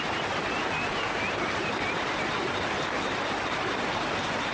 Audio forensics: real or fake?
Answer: real